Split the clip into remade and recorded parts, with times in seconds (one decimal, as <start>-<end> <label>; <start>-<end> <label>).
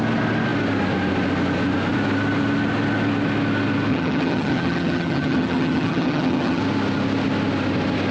0.0-3.9 recorded; 3.9-6.6 remade; 6.6-8.1 recorded